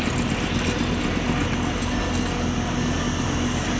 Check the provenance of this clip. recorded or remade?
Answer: recorded